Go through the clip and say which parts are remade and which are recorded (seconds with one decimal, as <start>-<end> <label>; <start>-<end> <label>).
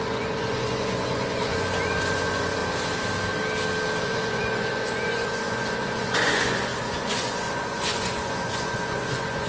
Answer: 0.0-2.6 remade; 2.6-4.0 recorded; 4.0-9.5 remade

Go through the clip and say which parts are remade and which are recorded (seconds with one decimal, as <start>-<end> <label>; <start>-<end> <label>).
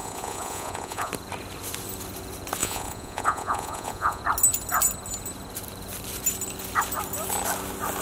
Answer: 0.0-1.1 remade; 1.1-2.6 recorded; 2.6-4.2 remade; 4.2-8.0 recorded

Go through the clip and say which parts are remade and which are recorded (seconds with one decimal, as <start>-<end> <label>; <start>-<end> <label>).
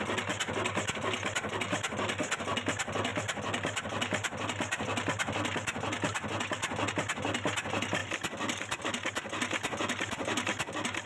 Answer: 0.0-3.1 recorded; 3.1-6.9 remade; 6.9-11.1 recorded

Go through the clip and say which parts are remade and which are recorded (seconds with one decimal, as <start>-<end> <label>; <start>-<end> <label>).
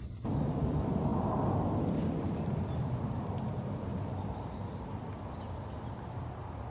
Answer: 0.0-6.7 recorded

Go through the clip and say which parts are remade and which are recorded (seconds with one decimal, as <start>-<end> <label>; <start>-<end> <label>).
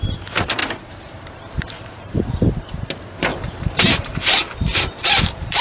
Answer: 0.0-0.6 remade; 0.6-1.6 recorded; 1.6-5.6 remade